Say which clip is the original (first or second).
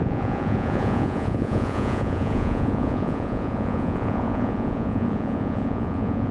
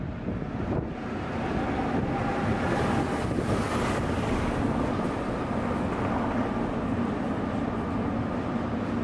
second